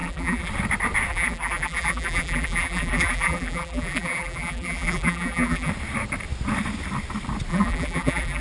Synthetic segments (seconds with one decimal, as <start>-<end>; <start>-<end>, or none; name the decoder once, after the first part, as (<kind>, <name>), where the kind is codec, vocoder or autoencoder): 0.0-0.5 (vocoder, BigVGAN v2); 1.1-5.7; 7.5-8.4